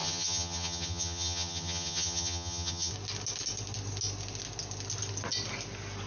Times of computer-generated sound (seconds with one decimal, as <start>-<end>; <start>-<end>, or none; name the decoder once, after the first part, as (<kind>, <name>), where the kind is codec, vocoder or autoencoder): 0.0-2.9 (vocoder, HiFi-GAN)